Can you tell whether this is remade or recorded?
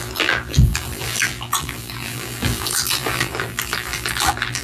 remade